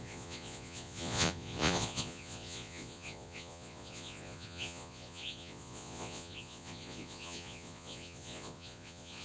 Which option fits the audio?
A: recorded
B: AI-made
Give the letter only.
B